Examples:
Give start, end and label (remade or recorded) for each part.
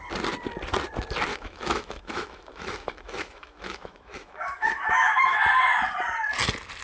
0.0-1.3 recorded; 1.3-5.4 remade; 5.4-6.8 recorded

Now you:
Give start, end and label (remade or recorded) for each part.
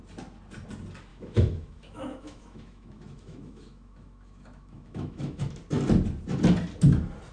0.0-1.1 recorded; 1.1-5.5 remade; 5.5-7.3 recorded